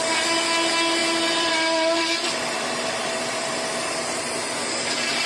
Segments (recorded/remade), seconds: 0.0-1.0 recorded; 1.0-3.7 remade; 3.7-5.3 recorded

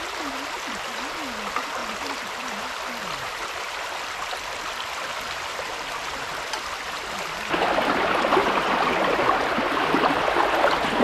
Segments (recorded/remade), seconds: 0.0-1.8 recorded; 1.8-2.9 remade; 2.9-11.0 recorded